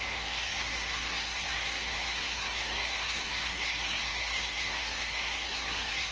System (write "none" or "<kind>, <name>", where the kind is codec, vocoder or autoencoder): codec, SNAC